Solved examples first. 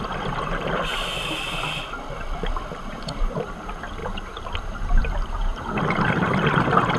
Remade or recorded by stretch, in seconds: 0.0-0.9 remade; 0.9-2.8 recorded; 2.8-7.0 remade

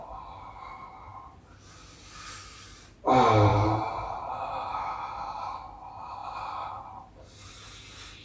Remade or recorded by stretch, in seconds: 0.0-3.5 recorded; 3.5-4.3 remade; 4.3-8.2 recorded

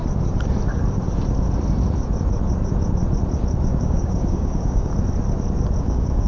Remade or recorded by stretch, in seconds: 0.0-3.8 recorded; 3.8-4.9 remade; 4.9-5.8 recorded; 5.8-6.3 remade

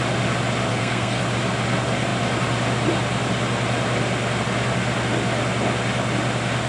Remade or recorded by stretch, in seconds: 0.0-0.7 recorded; 0.7-1.2 remade; 1.2-6.7 recorded

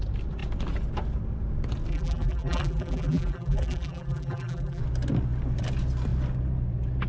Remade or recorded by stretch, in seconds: 0.0-1.9 recorded; 1.9-4.8 remade; 4.8-7.1 recorded